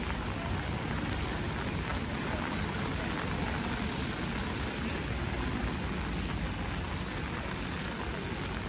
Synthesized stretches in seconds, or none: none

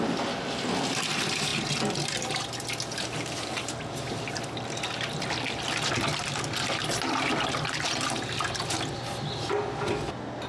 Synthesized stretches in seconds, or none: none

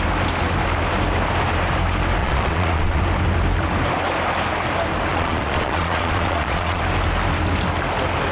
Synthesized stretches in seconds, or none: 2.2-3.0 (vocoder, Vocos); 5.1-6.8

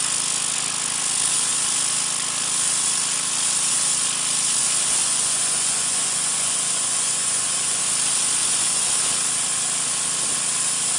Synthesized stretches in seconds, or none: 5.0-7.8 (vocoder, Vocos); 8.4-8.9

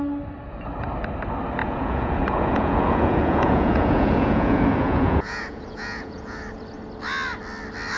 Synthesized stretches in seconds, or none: 1.6-6.4 (vocoder, Vocos)

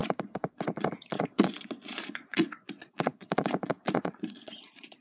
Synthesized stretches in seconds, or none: 0.0-5.0 (vocoder, Vocos)

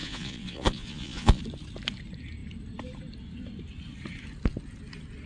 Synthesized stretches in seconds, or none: 0.0-1.4 (vocoder, Vocos)